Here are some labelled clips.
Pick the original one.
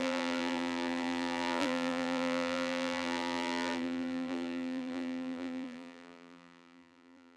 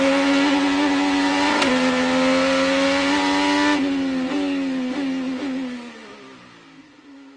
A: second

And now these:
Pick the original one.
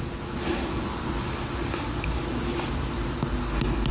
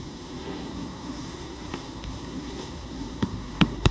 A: first